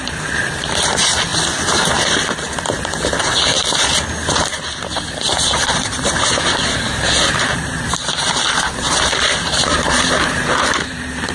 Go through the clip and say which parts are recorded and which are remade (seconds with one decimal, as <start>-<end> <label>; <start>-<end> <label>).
0.0-1.3 remade; 1.3-4.3 recorded; 4.3-11.3 remade